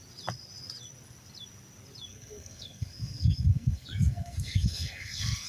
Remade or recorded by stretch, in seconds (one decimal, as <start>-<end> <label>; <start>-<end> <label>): 0.0-2.1 recorded; 2.1-5.5 remade